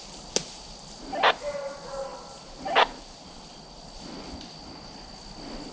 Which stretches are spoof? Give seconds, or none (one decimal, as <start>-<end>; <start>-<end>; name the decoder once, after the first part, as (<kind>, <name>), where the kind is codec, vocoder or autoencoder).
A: none